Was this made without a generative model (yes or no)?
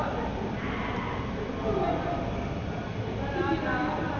yes